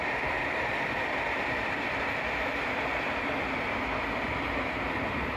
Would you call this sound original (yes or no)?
no